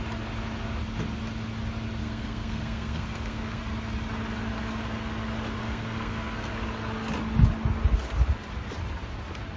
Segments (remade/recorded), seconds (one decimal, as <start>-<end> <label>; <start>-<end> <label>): 0.0-2.0 recorded; 2.0-3.6 remade; 3.6-5.6 recorded; 5.6-6.5 remade; 6.5-9.6 recorded